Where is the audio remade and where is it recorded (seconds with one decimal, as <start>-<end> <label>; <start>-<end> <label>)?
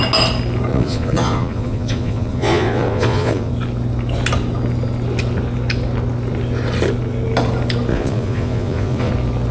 0.0-0.7 recorded; 0.7-3.5 remade; 3.5-7.9 recorded; 7.9-9.1 remade; 9.1-9.5 recorded